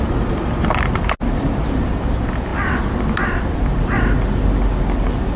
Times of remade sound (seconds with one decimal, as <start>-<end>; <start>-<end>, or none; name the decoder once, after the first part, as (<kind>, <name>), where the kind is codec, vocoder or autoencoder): none